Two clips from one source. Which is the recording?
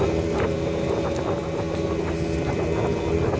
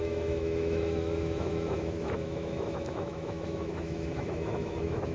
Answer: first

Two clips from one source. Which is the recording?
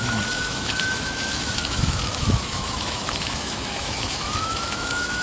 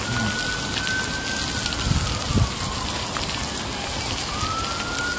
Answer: second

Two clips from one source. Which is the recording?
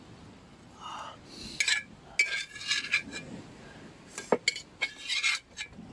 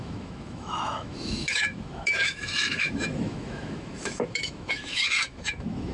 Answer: first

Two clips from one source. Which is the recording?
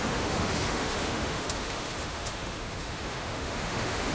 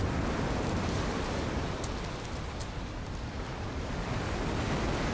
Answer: second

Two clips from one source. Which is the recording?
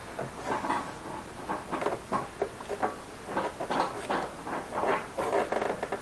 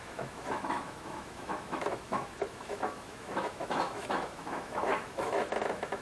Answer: first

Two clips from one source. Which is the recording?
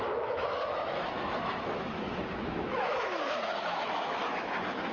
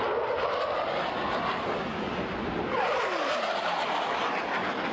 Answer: second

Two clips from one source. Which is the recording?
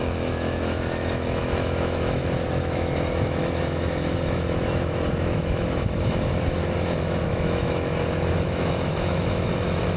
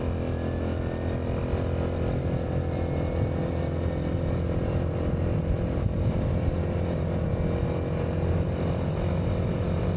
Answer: second